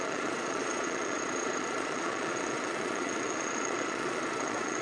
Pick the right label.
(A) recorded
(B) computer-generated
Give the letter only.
B